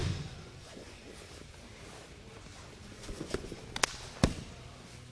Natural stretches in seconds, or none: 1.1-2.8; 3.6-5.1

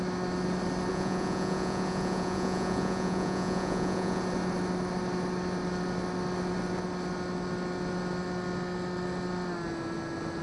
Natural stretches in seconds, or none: 0.0-0.9; 4.2-10.4

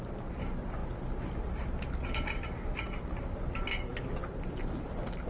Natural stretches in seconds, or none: 0.0-5.3

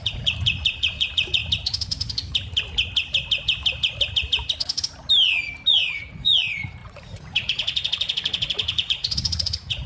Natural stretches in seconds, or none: 1.4-5.7

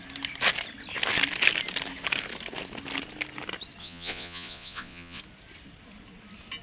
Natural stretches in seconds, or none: 0.0-3.8; 5.2-6.6

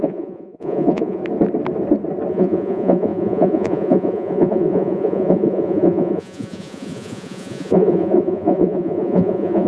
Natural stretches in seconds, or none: 1.2-2.3

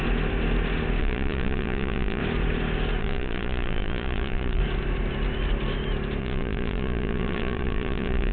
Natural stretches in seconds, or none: 0.0-1.0; 2.2-3.0; 4.6-6.2